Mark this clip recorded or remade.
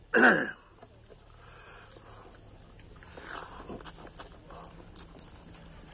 recorded